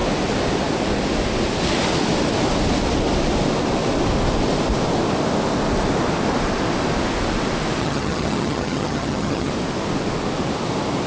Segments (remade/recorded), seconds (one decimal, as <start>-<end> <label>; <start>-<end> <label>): 0.0-7.8 recorded; 7.8-9.5 remade; 9.5-11.1 recorded